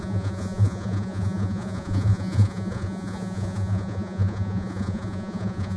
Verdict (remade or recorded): remade